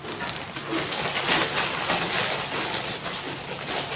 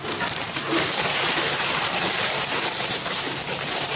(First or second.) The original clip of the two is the first